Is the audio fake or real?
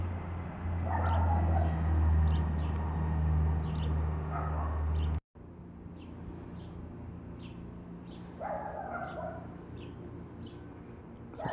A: real